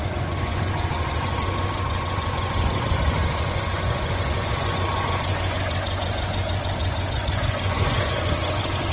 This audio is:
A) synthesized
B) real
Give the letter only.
A